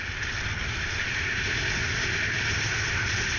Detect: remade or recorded recorded